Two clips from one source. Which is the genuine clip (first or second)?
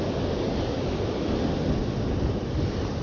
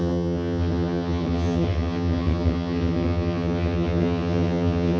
first